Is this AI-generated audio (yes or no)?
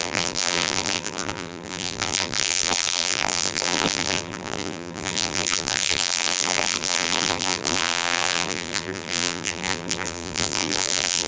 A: yes